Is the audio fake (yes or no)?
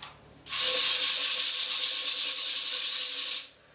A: no